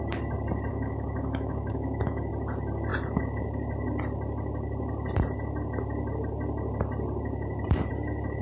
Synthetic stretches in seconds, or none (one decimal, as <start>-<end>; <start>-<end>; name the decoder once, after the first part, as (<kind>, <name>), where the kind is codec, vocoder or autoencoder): 0.7-2.3 (autoencoder, DAC-VAE)